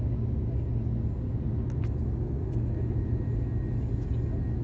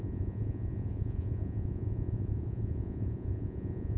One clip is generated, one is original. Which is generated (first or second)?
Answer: second